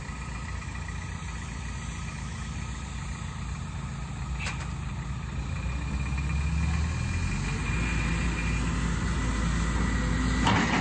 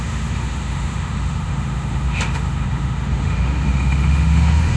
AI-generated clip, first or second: second